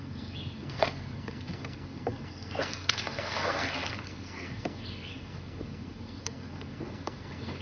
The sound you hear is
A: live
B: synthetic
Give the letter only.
B